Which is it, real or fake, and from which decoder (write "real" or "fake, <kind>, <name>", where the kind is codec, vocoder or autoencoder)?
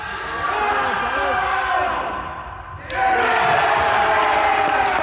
real